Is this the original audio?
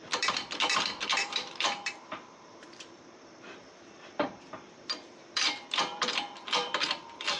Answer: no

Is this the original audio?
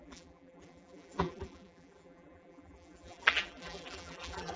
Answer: no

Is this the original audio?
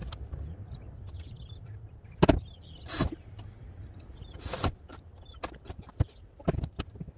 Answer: no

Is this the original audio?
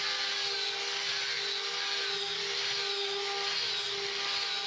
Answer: yes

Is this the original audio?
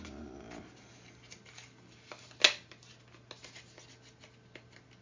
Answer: yes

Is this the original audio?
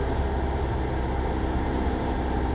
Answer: yes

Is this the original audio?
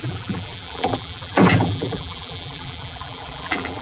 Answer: no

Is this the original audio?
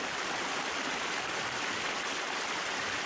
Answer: yes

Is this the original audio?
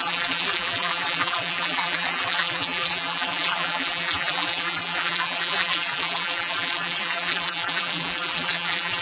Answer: no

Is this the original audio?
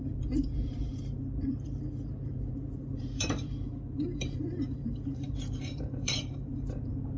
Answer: no